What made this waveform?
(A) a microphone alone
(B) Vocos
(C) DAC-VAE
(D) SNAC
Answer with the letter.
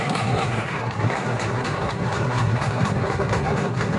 D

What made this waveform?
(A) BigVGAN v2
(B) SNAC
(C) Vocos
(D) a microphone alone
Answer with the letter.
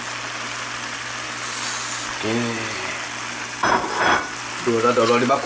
D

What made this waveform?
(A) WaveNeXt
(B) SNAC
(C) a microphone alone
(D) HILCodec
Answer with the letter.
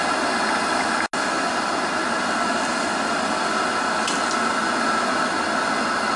C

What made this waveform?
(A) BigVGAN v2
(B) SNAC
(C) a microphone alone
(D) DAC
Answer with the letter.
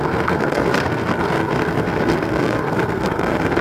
B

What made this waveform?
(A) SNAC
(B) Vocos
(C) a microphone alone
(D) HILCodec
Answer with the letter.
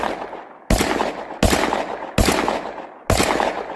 C